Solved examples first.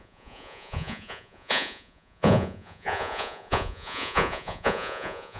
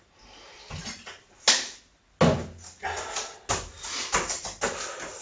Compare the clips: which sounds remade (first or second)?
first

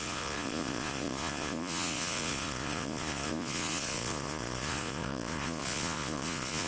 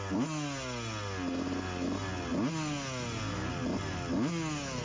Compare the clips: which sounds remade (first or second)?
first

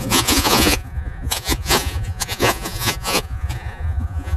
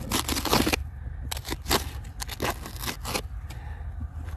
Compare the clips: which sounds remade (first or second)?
first